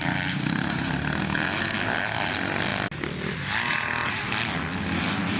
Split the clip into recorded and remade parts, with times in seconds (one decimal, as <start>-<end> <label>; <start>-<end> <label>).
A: 0.0-1.2 remade; 1.2-5.4 recorded